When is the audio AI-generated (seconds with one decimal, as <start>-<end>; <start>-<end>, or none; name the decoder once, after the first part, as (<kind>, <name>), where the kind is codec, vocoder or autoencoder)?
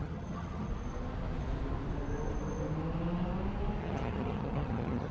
0.0-0.7 (vocoder, HiFi-GAN); 3.8-5.1